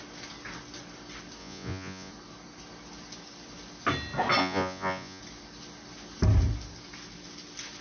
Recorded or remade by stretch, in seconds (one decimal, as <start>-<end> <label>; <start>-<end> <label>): 0.0-1.4 recorded; 1.4-2.1 remade; 2.1-4.4 recorded; 4.4-5.2 remade; 5.2-7.8 recorded